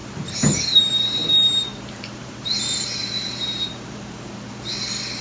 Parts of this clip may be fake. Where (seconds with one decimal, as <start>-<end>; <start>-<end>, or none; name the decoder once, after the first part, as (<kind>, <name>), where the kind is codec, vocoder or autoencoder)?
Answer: 0.0-0.6 (vocoder, BigVGAN v2); 1.7-4.5